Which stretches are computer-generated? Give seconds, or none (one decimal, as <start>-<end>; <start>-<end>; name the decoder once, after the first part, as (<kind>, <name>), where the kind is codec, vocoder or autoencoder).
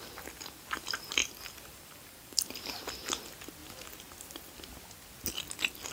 1.2-2.4 (vocoder, BigVGAN v2)